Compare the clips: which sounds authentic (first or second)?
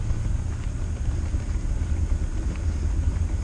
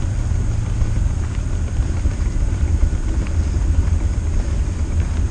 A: first